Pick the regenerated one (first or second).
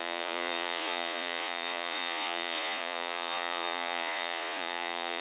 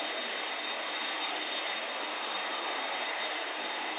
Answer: first